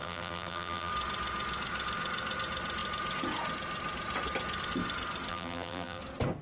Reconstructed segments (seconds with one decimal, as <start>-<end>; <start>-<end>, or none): 0.0-0.9; 5.3-6.0